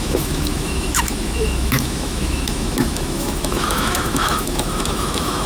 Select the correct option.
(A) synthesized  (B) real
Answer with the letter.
A